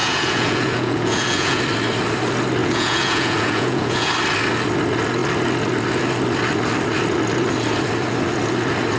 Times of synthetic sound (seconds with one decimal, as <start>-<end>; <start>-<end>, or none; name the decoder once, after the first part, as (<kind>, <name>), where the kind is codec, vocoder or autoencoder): 0.0-1.6 (vocoder, Vocos); 2.6-4.1